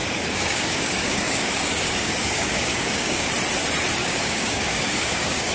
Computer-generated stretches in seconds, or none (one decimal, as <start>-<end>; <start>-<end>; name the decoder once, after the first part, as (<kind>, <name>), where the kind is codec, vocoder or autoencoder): 0.0-3.3 (codec, DAC); 4.0-5.5